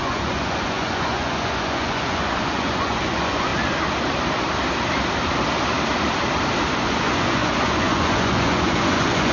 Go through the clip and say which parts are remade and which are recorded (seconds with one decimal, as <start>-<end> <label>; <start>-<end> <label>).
0.0-3.5 remade; 3.5-6.8 recorded; 6.8-9.3 remade